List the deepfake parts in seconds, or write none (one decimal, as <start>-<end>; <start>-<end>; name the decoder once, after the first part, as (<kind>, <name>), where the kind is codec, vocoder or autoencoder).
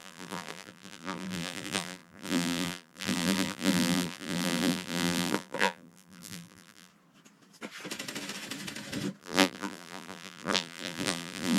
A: 0.0-6.9 (vocoder, BigVGAN v2); 9.2-11.6